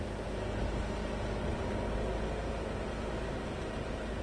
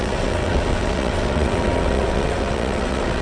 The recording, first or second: first